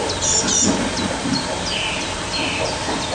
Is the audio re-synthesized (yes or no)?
no